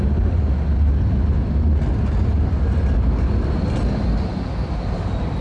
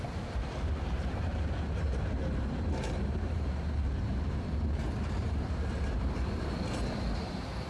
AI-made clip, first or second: second